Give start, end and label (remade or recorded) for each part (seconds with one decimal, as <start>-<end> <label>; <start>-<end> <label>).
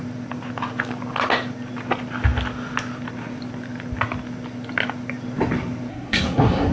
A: 0.0-5.9 recorded; 5.9-6.7 remade